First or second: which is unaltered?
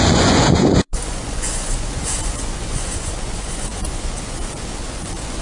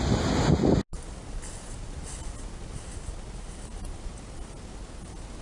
second